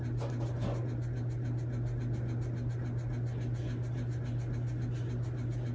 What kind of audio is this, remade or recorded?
recorded